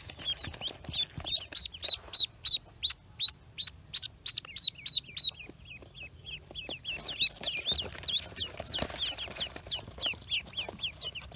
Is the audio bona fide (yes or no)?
yes